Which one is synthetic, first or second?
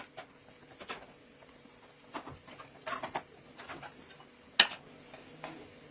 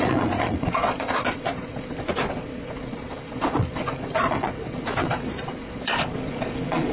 second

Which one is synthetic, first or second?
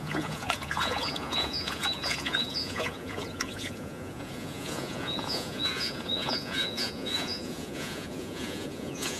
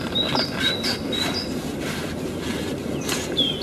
first